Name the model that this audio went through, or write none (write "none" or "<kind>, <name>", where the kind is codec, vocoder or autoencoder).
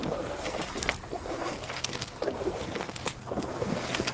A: codec, SNAC